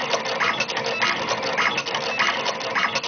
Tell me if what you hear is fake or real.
real